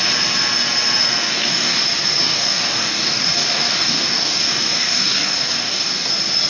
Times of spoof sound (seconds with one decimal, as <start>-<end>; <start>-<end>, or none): 1.3-1.8; 2.2-6.1